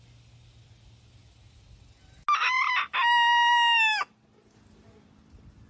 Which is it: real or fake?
real